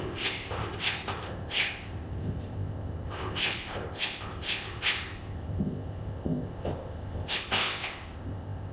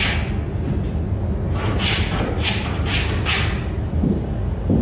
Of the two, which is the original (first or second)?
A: second